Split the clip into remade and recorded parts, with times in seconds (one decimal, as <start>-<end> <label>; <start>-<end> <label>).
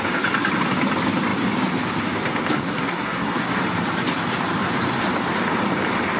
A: 0.0-2.5 recorded; 2.5-3.5 remade; 3.5-6.2 recorded